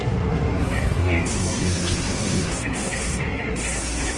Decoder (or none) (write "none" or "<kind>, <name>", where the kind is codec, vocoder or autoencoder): codec, SNAC